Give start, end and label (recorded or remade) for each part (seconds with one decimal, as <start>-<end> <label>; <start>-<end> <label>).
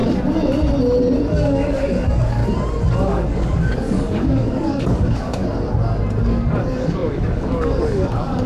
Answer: 0.0-1.2 recorded; 1.2-2.4 remade; 2.4-2.9 recorded; 2.9-5.4 remade; 5.4-6.2 recorded; 6.2-8.5 remade